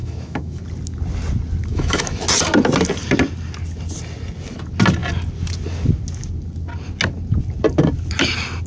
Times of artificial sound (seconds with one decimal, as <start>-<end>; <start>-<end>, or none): 0.0-0.6; 1.7-2.2